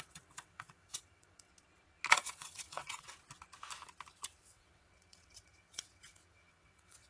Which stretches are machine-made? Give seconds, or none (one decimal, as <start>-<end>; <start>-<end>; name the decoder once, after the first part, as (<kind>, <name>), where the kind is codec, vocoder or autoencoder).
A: 0.0-1.5 (vocoder, WaveNeXt); 2.1-3.1; 4.4-7.1